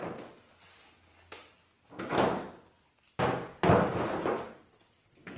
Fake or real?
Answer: real